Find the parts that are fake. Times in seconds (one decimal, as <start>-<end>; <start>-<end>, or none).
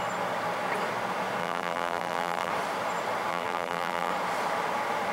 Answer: 1.4-2.5; 3.3-4.1